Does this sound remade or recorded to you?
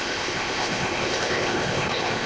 remade